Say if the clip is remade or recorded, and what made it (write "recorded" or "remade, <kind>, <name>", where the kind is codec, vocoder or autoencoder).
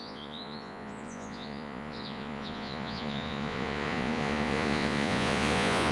remade, vocoder, Vocos